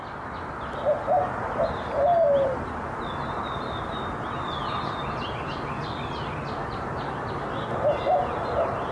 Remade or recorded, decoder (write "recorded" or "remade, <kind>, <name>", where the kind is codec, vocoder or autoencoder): recorded